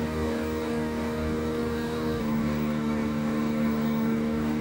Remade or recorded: remade